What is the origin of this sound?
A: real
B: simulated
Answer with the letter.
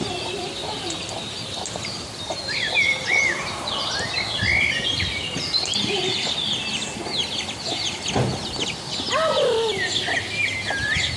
A